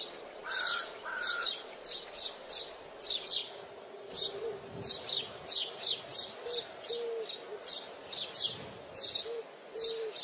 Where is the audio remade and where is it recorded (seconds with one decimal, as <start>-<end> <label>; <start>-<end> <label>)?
0.0-0.4 recorded; 0.4-2.5 remade; 2.5-3.4 recorded; 3.4-4.1 remade; 4.1-10.2 recorded